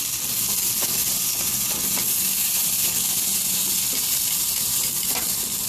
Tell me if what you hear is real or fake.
real